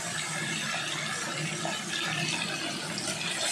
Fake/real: real